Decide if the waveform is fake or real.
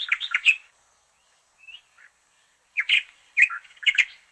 fake